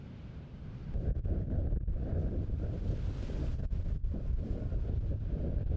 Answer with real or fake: real